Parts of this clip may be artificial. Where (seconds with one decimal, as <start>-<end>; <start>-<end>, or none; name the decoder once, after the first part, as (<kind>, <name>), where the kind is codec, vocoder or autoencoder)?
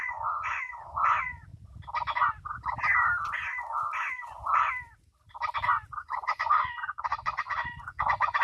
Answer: 0.0-1.5 (vocoder, Vocos); 6.0-8.4